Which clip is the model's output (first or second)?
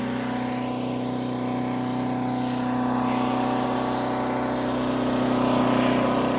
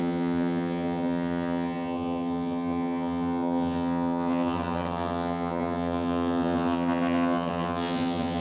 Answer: second